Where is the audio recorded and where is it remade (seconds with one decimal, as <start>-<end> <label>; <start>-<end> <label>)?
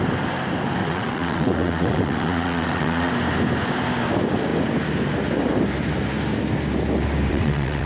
0.0-0.8 recorded; 0.8-3.1 remade; 3.1-7.3 recorded; 7.3-7.9 remade